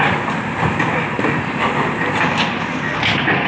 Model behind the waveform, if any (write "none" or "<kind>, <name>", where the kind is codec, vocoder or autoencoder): none